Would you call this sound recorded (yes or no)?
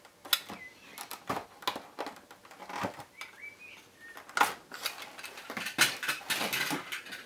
yes